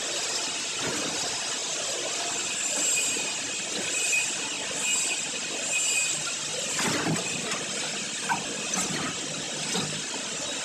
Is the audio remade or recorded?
recorded